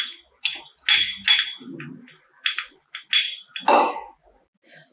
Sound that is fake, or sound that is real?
real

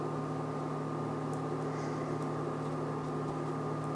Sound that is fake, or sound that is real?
real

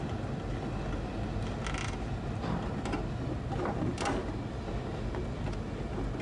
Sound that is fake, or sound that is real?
real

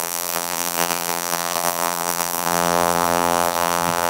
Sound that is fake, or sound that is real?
fake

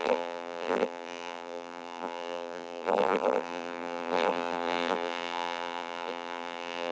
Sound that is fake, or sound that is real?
fake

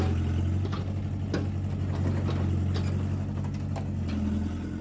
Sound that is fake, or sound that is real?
real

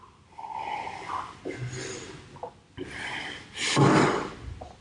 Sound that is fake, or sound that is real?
real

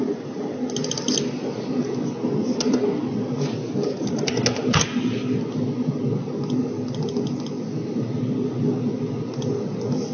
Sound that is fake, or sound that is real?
real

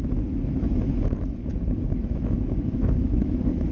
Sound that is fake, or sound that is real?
fake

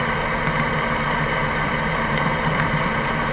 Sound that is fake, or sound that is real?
fake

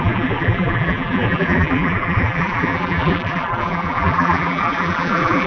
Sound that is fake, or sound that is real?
fake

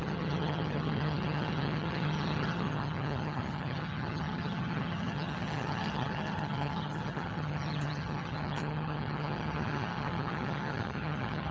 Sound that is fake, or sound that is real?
fake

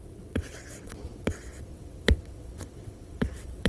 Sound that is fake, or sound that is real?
fake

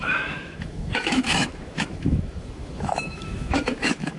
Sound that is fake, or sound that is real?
fake